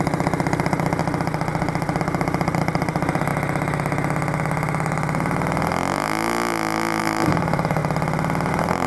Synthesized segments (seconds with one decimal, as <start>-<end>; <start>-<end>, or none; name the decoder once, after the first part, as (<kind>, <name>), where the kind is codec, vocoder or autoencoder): 0.0-1.0 (vocoder, BigVGAN v2); 2.0-3.3; 7.0-7.8; 8.5-8.9